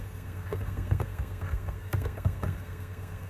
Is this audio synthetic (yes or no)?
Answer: yes